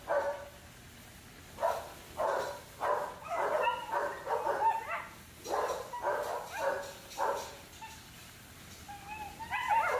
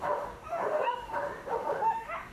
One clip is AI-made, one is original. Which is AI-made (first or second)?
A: second